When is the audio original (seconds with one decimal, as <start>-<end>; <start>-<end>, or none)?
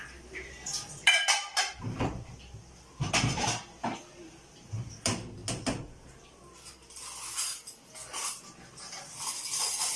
2.3-2.9; 5.4-9.6